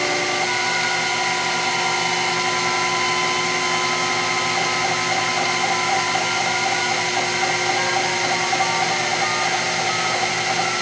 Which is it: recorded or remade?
recorded